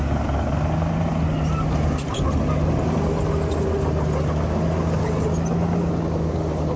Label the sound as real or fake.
real